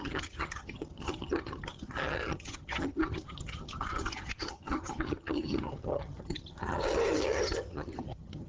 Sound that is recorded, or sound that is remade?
remade